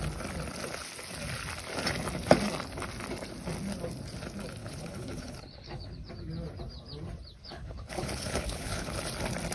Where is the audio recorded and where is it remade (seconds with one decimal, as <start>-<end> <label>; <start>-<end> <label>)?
0.0-4.6 recorded; 4.6-6.1 remade; 6.1-7.4 recorded; 7.4-9.0 remade; 9.0-9.5 recorded